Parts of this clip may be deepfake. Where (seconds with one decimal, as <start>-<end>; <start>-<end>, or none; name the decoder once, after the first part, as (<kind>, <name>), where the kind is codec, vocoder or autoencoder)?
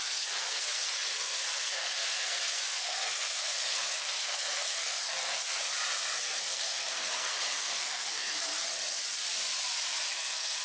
0.0-5.6 (codec, SNAC); 6.2-8.5; 10.1-10.6